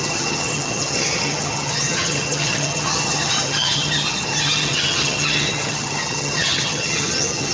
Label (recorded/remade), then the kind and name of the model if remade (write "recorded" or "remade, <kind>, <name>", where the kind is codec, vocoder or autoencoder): remade, vocoder, HiFi-GAN